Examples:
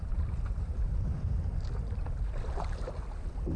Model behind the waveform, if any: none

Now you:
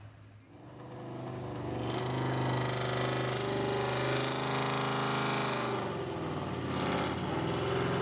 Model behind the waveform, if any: none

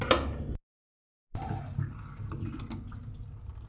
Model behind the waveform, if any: none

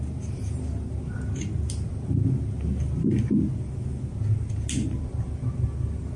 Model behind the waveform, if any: none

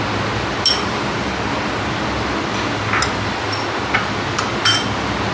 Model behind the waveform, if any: none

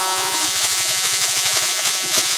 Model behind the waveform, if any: vocoder, Vocos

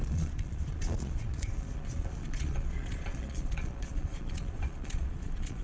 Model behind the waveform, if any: vocoder, Vocos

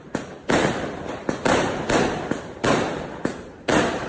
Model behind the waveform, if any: none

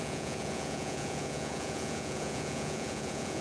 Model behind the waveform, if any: vocoder, Vocos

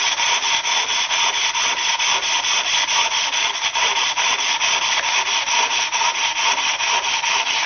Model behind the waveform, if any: none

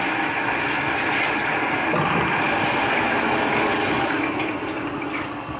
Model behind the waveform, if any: none